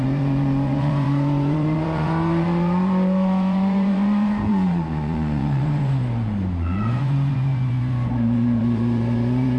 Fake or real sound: fake